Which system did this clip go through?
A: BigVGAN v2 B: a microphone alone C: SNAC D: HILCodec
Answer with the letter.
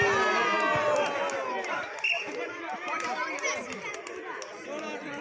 B